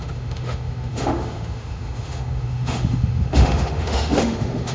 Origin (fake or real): fake